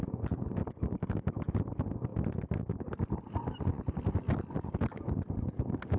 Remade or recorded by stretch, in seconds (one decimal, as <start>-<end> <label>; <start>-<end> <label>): 0.0-0.6 recorded; 0.6-1.3 remade; 1.3-6.0 recorded